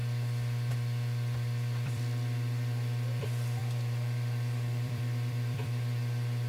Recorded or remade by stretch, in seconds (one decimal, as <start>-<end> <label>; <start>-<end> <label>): 0.0-0.7 recorded; 0.7-6.5 remade